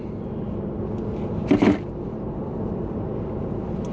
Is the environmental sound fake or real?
real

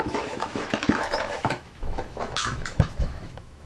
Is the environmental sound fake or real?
fake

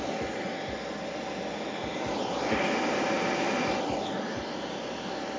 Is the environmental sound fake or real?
real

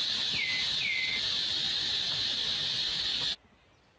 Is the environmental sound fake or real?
real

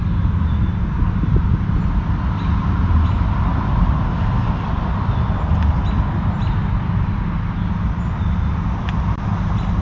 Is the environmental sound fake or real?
real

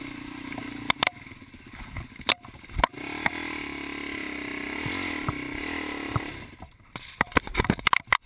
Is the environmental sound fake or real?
real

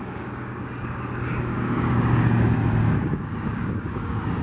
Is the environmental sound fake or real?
fake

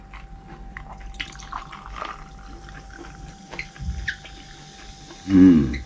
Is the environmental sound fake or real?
real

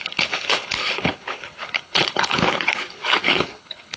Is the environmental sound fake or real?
fake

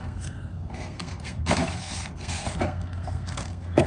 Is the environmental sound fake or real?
fake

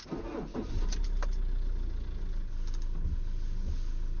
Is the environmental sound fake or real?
real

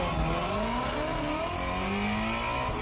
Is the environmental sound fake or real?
real